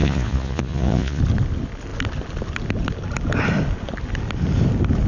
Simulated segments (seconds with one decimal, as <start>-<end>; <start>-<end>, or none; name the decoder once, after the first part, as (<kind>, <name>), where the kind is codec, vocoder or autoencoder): 0.0-1.2 (vocoder, Vocos)